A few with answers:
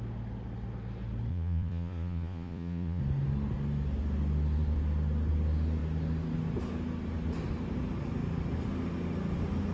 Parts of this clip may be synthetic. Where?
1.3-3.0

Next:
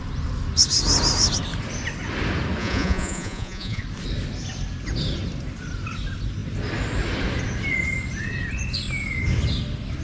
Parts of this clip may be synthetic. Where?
2.6-3.8

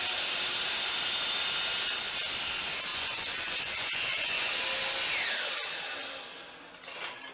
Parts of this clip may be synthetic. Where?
2.9-4.5

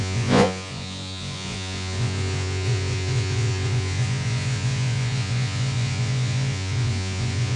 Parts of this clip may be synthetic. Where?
0.0-7.6